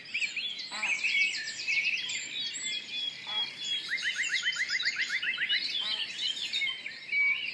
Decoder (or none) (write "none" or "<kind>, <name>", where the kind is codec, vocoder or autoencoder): none